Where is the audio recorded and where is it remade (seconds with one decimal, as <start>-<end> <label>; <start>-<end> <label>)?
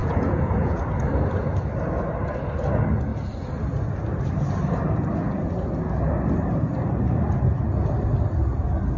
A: 0.0-0.8 remade; 0.8-9.0 recorded